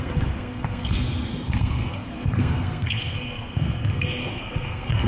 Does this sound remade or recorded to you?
remade